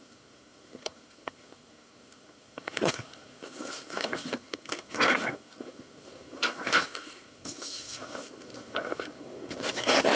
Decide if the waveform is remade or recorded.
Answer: remade